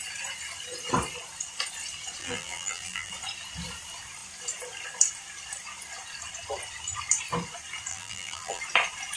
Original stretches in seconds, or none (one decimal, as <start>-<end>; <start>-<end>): 0.0-2.2; 3.1-7.9; 8.6-9.2